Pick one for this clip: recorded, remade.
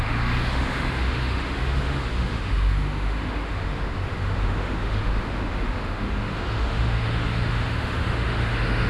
remade